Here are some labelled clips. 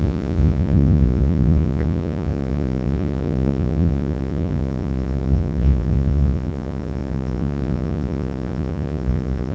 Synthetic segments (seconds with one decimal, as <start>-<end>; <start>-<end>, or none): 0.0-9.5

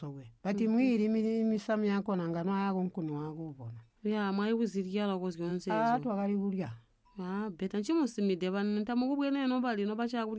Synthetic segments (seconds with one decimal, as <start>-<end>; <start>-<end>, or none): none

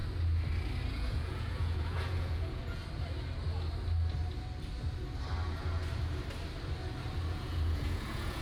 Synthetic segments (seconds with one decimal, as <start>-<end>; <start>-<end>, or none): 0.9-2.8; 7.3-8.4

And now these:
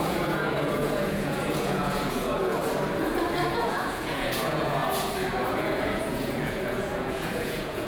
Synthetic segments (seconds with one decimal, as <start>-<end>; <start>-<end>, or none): 0.0-2.6; 3.5-4.8; 5.5-7.9

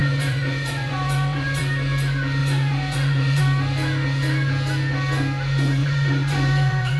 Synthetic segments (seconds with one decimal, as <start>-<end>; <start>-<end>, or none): 0.0-1.6; 2.4-3.4; 5.8-7.0

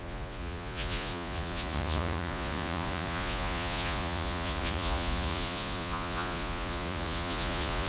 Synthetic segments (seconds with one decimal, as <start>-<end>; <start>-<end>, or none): 0.0-7.9

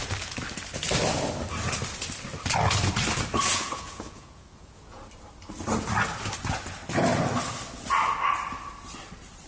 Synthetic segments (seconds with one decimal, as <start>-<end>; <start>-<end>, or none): 3.5-5.0

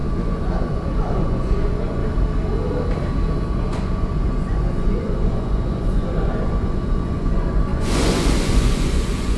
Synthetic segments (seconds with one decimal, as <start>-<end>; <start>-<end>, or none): 0.0-2.0; 3.5-9.4